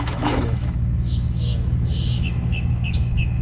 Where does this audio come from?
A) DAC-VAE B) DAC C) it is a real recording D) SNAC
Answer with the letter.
A